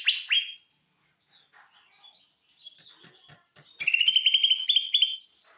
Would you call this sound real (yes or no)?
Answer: yes